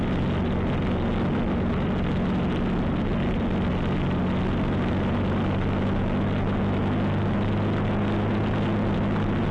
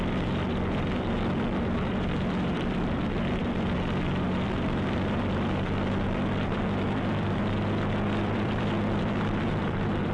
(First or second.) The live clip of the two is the first